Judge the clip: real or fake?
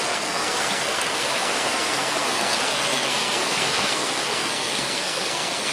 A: fake